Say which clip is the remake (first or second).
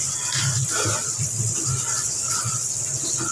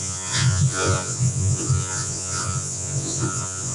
second